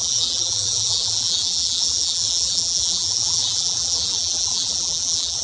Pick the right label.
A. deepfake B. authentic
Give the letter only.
A